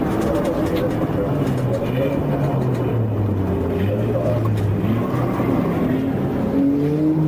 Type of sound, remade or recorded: recorded